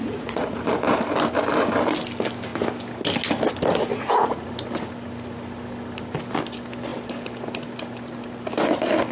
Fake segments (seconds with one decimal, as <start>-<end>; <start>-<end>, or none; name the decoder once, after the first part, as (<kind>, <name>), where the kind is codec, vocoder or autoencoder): 0.0-0.6 (vocoder, Vocos); 3.9-4.5